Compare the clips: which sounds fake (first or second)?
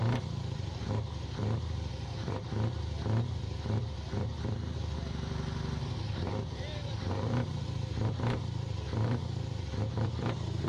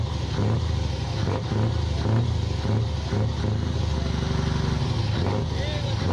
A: first